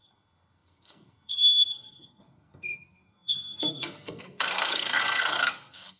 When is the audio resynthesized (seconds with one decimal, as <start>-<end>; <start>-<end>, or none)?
0.0-6.0